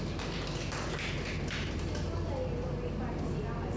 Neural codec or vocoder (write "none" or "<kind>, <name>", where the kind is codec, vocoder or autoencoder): none